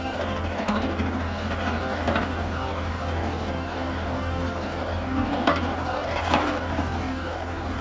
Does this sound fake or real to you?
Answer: fake